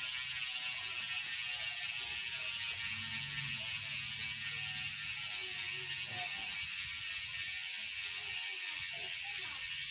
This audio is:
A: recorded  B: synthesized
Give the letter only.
A